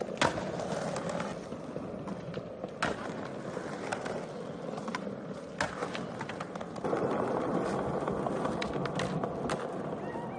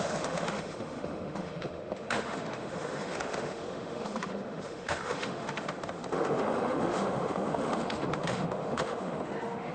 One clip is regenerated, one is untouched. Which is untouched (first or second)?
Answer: first